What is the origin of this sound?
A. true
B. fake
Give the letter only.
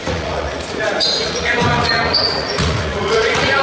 B